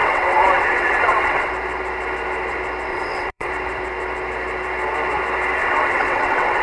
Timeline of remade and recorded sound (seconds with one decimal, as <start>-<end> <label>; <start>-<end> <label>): 0.0-1.5 remade; 1.5-2.9 recorded; 2.9-3.5 remade; 3.5-5.6 recorded; 5.6-6.6 remade